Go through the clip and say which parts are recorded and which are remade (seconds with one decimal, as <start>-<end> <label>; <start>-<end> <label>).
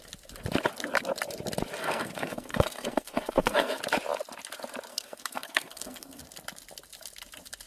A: 0.0-1.8 recorded; 1.8-3.8 remade; 3.8-4.9 recorded; 4.9-6.2 remade; 6.2-7.7 recorded